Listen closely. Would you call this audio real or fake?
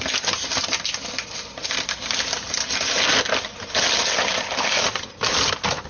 real